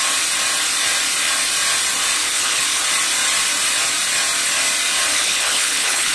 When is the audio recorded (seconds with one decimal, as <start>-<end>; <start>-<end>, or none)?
0.0-2.2; 2.8-5.1